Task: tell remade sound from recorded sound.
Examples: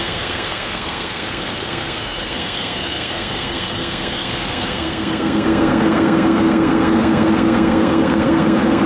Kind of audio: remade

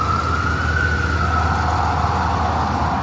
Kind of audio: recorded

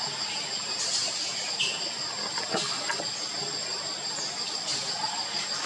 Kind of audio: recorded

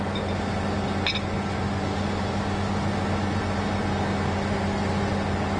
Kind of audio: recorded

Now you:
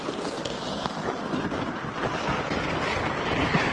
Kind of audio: recorded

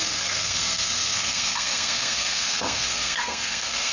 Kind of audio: remade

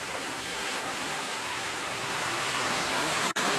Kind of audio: remade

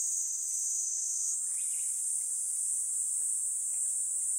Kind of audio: recorded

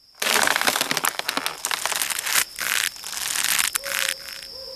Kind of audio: recorded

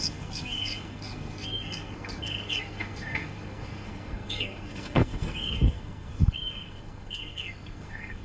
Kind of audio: remade